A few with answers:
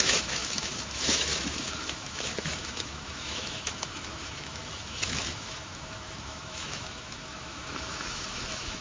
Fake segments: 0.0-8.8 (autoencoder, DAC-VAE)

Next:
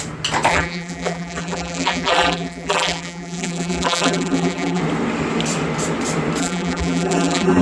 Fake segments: 0.5-4.8 (vocoder, BigVGAN v2); 6.4-7.6

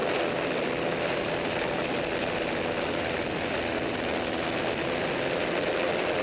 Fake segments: none

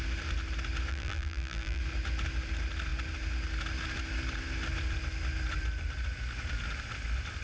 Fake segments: 0.9-1.8 (vocoder, BigVGAN v2)